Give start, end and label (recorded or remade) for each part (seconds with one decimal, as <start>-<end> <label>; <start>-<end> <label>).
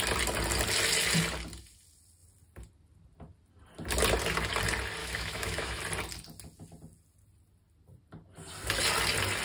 0.0-5.0 recorded; 5.0-5.8 remade; 5.8-9.4 recorded